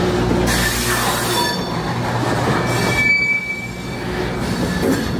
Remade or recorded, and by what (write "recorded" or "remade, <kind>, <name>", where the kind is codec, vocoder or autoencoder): recorded